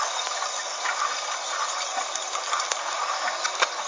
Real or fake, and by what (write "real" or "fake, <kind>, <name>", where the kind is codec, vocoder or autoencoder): real